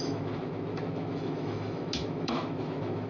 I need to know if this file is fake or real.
fake